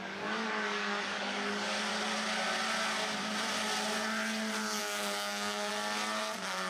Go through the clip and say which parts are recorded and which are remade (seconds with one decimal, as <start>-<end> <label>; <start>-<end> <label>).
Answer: 0.0-1.9 remade; 1.9-4.8 recorded; 4.8-5.7 remade; 5.7-6.2 recorded; 6.2-6.7 remade